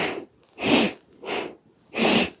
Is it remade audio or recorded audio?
recorded